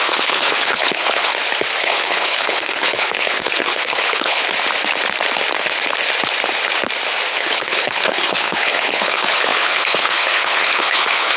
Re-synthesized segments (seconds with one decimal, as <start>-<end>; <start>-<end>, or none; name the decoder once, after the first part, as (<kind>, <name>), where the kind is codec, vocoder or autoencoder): 0.0-1.3 (codec, HILCodec); 1.8-4.4; 7.3-11.4